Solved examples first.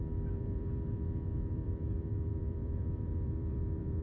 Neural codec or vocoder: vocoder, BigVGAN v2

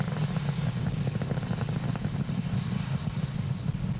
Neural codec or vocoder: none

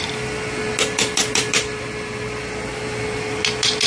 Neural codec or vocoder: none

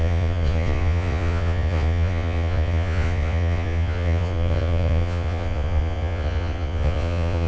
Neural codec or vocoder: vocoder, Vocos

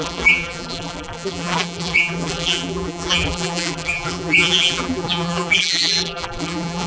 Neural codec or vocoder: vocoder, BigVGAN v2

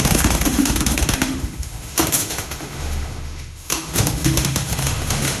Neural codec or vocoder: autoencoder, DAC-VAE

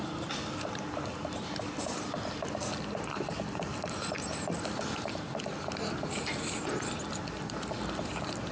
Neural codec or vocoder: none